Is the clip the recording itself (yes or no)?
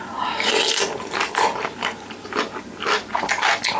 yes